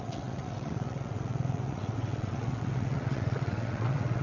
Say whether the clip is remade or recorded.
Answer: remade